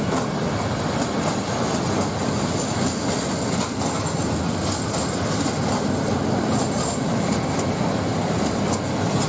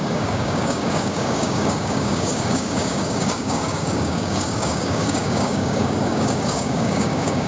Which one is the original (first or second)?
first